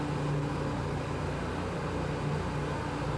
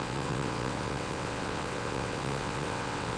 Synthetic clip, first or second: second